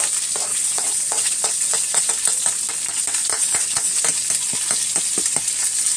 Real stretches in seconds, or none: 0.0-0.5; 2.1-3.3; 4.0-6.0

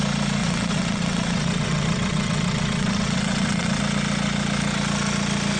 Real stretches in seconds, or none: 0.0-0.4; 3.8-5.6